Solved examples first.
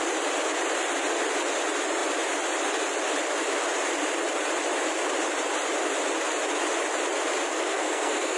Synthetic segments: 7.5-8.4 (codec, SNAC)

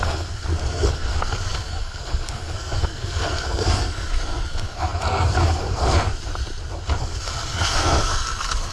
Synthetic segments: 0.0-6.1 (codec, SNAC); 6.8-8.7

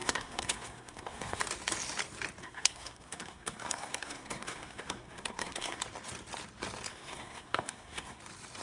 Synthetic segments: 0.0-1.4 (codec, SNAC); 2.4-5.8; 6.9-8.2

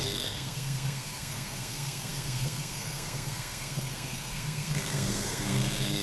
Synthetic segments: 0.0-6.0 (codec, SNAC)

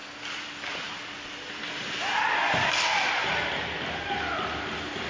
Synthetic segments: none